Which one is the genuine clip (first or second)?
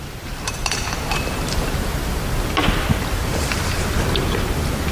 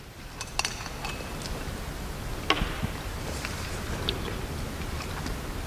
second